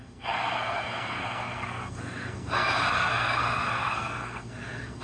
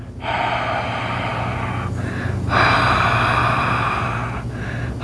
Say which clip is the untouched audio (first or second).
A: second